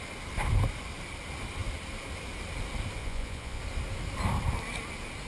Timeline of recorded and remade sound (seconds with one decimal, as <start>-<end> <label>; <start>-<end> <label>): 0.0-3.0 recorded; 3.0-3.6 remade; 3.6-5.3 recorded